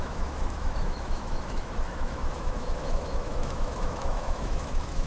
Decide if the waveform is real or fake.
fake